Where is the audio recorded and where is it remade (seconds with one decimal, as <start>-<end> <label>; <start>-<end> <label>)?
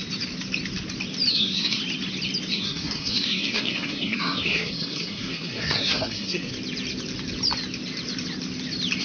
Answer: 0.0-1.3 recorded; 1.3-1.8 remade; 1.8-2.5 recorded; 2.5-6.5 remade; 6.5-9.0 recorded